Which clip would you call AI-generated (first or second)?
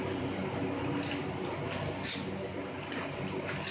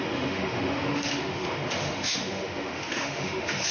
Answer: second